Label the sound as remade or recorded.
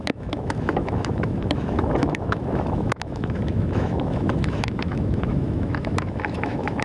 remade